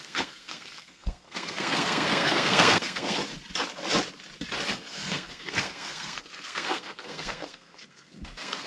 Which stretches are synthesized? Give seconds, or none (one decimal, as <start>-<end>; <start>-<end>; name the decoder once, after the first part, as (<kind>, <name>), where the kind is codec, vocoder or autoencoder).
0.0-3.2 (codec, SNAC); 4.7-8.7